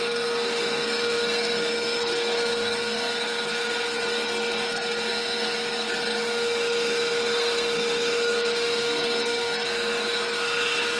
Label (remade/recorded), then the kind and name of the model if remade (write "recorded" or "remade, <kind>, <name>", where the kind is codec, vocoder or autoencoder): remade, codec, SNAC